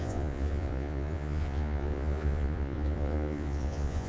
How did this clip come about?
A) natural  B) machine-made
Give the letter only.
B